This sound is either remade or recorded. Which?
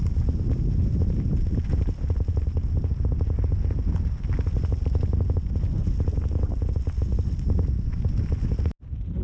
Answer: recorded